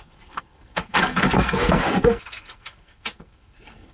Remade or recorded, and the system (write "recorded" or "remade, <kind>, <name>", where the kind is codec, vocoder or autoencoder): remade, codec, SNAC